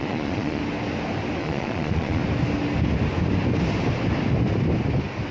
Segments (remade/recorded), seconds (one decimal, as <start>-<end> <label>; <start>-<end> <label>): 0.0-0.6 remade; 0.6-1.4 recorded; 1.4-2.2 remade; 2.2-5.3 recorded

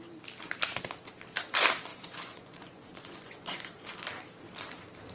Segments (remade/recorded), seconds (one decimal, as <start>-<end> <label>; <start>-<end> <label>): 0.0-1.9 recorded; 1.9-3.9 remade; 3.9-5.1 recorded